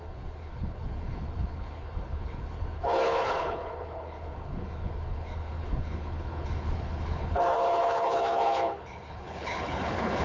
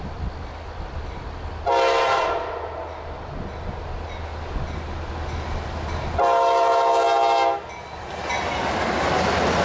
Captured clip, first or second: second